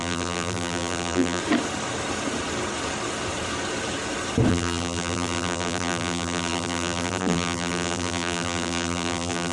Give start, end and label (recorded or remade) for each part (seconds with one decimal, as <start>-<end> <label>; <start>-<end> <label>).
0.0-1.4 remade; 1.4-4.5 recorded; 4.5-9.5 remade